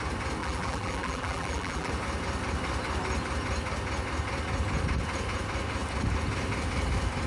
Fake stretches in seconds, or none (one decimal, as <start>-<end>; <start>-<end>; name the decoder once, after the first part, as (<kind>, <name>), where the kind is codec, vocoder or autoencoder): 0.4-1.9 (vocoder, BigVGAN v2)